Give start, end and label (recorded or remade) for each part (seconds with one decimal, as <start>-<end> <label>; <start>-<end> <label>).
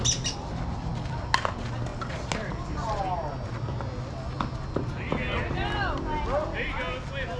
0.0-7.4 recorded